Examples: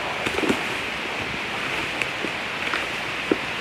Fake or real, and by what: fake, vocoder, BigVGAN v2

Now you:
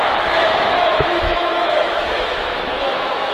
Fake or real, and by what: fake, autoencoder, DAC-VAE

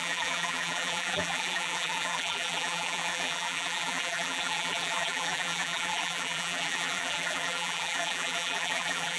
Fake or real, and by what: fake, vocoder, BigVGAN v2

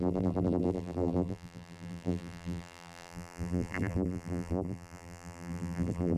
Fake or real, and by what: fake, vocoder, BigVGAN v2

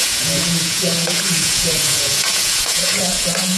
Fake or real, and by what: fake, vocoder, Vocos